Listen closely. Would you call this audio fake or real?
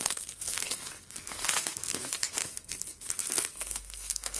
fake